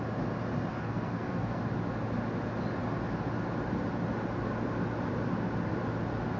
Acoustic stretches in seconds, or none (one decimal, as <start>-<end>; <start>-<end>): 0.0-0.7; 1.6-6.4